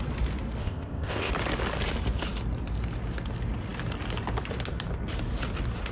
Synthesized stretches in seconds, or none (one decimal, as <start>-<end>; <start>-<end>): 0.6-1.3

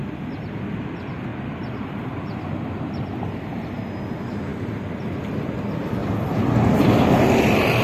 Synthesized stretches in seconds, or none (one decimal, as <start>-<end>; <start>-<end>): 1.3-1.9

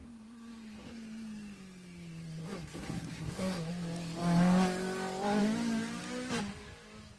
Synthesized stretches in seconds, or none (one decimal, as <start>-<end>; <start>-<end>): 0.0-0.9; 2.4-3.7

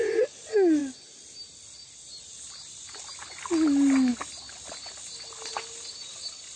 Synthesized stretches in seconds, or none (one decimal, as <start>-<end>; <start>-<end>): none